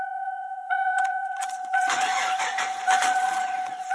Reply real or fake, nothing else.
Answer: fake